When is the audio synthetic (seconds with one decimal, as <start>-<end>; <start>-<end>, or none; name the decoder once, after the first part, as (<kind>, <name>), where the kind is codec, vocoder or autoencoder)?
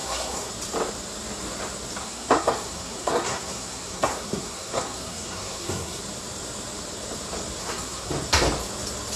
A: 0.0-0.5 (codec, SNAC); 2.0-6.0; 7.6-8.1